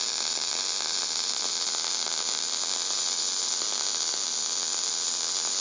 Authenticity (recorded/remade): recorded